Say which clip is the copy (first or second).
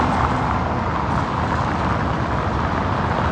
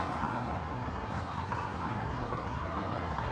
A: second